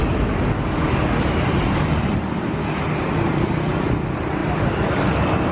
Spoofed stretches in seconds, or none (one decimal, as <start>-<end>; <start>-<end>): none